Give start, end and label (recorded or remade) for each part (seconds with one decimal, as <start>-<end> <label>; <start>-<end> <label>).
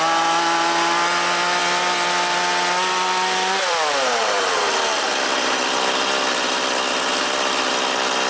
0.0-1.6 remade; 1.6-2.9 recorded; 2.9-8.3 remade